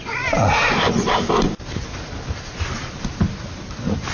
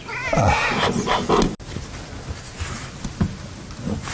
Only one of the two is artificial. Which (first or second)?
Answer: first